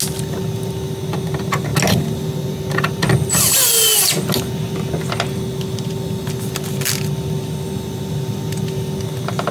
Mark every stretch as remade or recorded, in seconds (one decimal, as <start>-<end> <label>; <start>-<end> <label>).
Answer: 0.0-9.5 recorded